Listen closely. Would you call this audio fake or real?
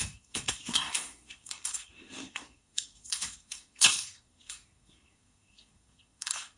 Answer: fake